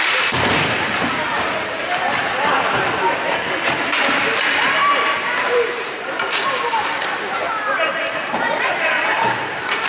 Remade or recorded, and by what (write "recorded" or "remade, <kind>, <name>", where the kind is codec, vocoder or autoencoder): remade, vocoder, BigVGAN v2